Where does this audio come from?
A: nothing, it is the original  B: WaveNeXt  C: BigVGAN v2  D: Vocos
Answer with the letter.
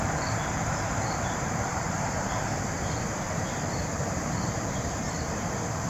C